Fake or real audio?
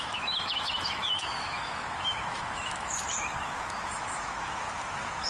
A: fake